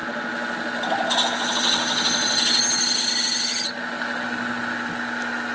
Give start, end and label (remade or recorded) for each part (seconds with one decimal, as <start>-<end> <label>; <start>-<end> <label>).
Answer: 0.0-5.5 recorded